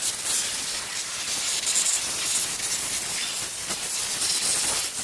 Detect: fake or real fake